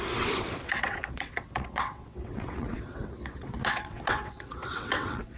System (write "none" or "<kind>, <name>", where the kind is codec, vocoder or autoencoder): vocoder, WaveNeXt